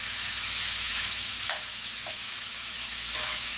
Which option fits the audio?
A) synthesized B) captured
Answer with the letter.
A